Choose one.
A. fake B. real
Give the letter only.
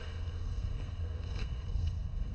A